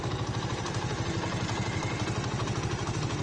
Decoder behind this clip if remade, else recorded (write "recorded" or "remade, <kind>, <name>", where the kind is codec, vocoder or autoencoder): recorded